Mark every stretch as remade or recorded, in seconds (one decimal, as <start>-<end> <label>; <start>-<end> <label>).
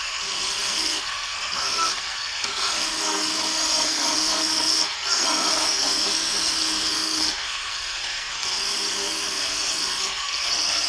0.0-10.9 remade